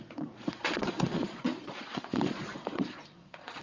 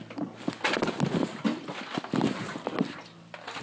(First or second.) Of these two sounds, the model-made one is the first